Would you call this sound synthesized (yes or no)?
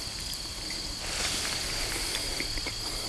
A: no